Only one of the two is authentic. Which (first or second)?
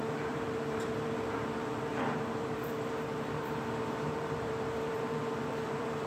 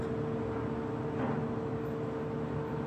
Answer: second